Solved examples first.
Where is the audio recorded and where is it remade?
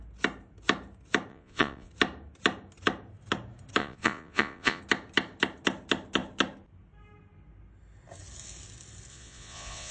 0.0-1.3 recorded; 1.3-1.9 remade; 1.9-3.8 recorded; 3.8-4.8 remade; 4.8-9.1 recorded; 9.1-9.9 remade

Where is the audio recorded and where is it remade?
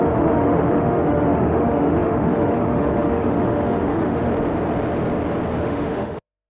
0.0-4.3 remade; 4.3-5.6 recorded; 5.6-6.5 remade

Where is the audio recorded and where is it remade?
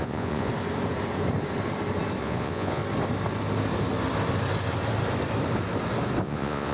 0.0-0.5 remade; 0.5-2.2 recorded; 2.2-2.8 remade; 2.8-6.2 recorded; 6.2-6.7 remade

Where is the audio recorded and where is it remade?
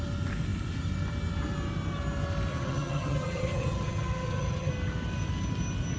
0.0-2.5 recorded; 2.5-4.7 remade; 4.7-6.0 recorded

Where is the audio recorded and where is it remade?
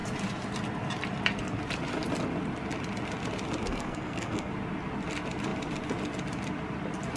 0.0-3.6 recorded; 3.6-4.5 remade; 4.5-7.2 recorded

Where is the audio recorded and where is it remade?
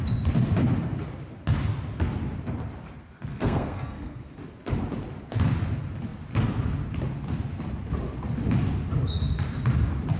0.0-3.3 recorded; 3.3-4.4 remade; 4.4-10.2 recorded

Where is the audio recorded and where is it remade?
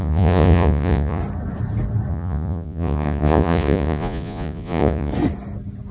0.0-1.2 remade; 1.2-2.1 recorded; 2.1-5.1 remade; 5.1-5.9 recorded